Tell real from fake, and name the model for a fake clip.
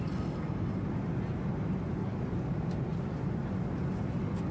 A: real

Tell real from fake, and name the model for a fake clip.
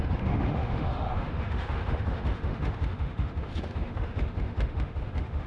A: fake, autoencoder, DAC-VAE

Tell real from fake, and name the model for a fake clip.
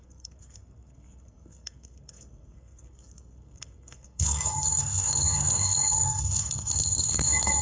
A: fake, codec, SNAC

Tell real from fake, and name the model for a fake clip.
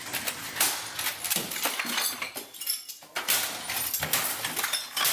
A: real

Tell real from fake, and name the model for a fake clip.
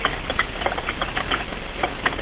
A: real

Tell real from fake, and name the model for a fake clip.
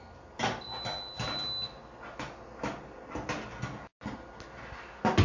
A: real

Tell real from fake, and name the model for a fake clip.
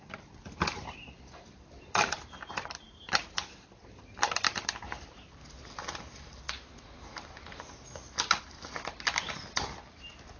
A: real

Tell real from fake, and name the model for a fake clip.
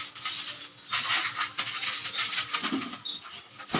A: real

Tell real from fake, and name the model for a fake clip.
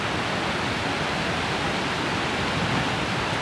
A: real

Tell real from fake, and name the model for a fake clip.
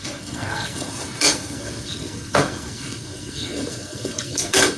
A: fake, codec, SNAC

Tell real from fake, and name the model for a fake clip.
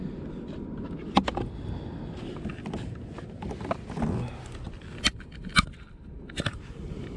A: real